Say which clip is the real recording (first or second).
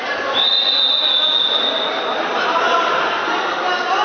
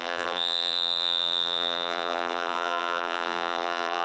first